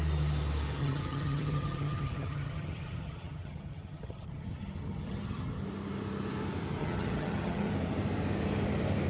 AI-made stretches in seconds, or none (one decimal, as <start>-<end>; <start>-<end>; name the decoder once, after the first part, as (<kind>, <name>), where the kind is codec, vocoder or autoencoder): 0.8-5.6 (vocoder, HiFi-GAN); 6.8-7.7